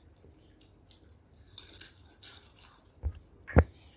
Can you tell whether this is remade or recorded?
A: recorded